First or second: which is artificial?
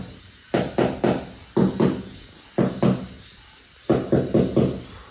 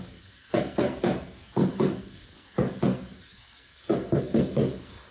second